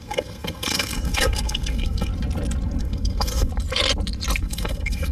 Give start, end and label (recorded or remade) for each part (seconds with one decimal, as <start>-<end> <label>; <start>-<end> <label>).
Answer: 0.0-2.1 remade; 2.1-2.8 recorded; 2.8-3.5 remade; 3.5-4.4 recorded; 4.4-5.1 remade